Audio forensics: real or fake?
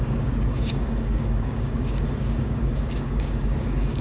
fake